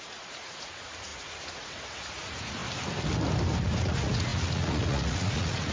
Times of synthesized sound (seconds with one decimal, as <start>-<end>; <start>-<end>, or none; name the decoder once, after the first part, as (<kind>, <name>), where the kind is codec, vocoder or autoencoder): 0.0-2.6 (vocoder, Vocos); 3.8-5.7